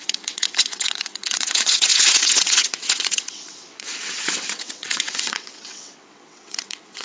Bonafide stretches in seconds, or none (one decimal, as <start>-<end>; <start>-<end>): none